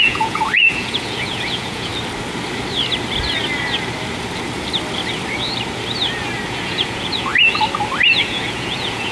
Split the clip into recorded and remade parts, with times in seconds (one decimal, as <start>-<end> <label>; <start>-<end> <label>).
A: 0.0-1.9 remade; 1.9-6.5 recorded; 6.5-7.3 remade; 7.3-8.1 recorded; 8.1-9.1 remade